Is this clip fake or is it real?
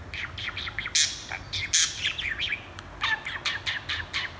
real